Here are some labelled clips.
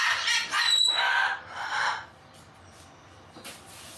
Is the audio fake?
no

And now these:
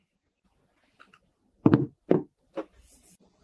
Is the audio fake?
no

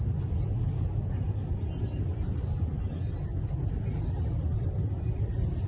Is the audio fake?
no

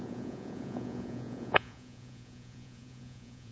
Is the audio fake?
yes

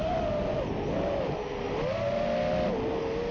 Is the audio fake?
no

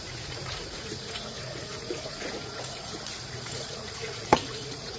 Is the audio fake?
yes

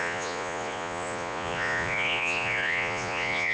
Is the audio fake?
yes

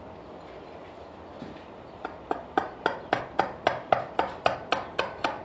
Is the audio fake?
no